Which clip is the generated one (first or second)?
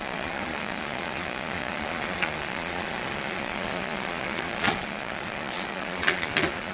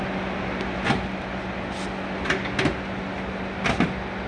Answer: first